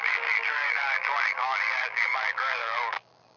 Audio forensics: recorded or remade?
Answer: remade